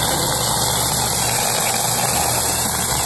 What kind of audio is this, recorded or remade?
recorded